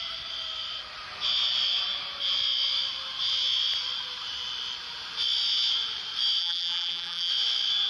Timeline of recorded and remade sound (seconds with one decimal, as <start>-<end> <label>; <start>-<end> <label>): 0.0-6.4 recorded; 6.4-7.3 remade; 7.3-7.9 recorded

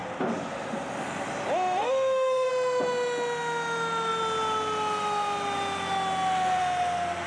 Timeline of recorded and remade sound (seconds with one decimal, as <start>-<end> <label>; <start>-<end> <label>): 0.0-1.8 recorded; 1.8-2.5 remade; 2.5-7.3 recorded

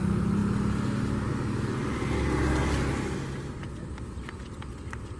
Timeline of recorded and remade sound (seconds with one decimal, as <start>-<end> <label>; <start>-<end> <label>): 0.0-5.2 recorded